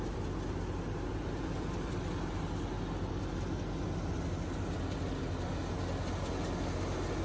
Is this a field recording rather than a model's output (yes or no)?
yes